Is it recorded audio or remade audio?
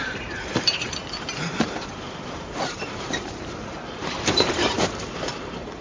remade